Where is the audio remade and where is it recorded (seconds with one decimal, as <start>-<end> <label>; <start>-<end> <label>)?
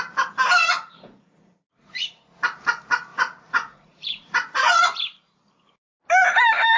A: 0.0-0.6 recorded; 0.6-2.2 remade; 2.2-3.1 recorded; 3.1-4.8 remade; 4.8-6.8 recorded